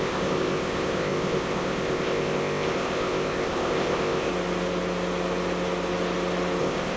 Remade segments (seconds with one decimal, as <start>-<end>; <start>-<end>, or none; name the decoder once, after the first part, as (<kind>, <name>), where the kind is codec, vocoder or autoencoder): 0.0-4.3 (codec, ZipCodec); 6.6-7.0